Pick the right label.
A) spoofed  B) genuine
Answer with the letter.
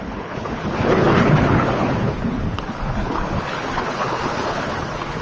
A